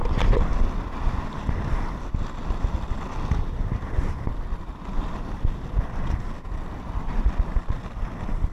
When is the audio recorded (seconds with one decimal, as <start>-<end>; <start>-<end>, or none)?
0.0-8.5